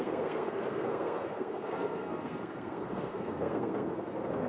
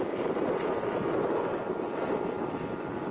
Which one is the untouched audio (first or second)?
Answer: second